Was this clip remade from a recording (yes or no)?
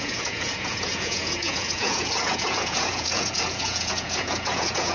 yes